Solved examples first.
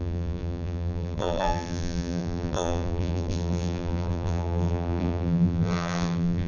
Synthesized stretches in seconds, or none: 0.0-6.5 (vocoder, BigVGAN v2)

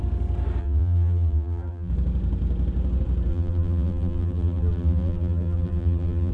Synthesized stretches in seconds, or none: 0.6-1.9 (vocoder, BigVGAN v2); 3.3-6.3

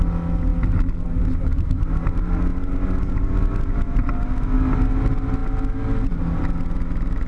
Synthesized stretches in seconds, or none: none

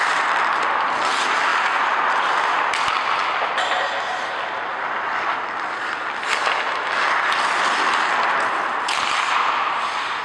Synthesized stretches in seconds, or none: 0.0-1.5 (vocoder, BigVGAN v2); 2.1-3.2; 8.3-10.2

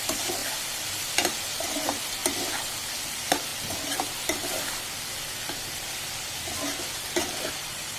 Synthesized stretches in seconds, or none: 0.0-0.4 (vocoder, BigVGAN v2); 0.9-2.2; 3.0-3.5; 7.5-8.0